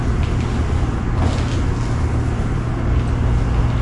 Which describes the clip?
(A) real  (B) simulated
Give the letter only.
A